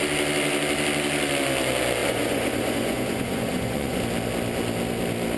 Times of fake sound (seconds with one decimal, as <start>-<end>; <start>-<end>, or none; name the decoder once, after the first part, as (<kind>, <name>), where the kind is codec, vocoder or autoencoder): 2.0-4.0 (vocoder, Vocos)